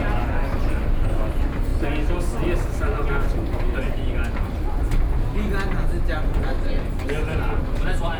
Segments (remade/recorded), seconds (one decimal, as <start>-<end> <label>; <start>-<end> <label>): 0.0-8.2 recorded